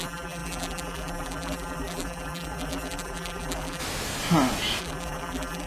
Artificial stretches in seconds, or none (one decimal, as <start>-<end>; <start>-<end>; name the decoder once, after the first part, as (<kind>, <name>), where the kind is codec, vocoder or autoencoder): 0.0-3.8 (vocoder, BigVGAN v2); 4.8-5.7